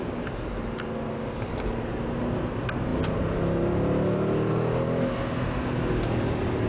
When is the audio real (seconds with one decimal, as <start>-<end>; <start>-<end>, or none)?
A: 0.0-6.7